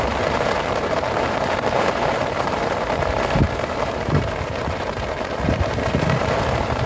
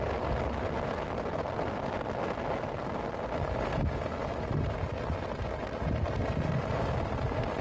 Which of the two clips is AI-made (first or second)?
first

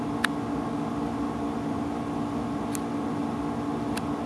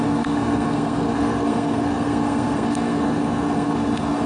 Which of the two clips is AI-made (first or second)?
second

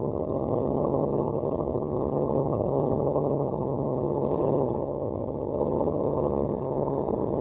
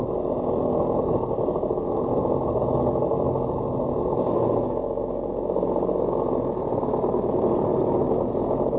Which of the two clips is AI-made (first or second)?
first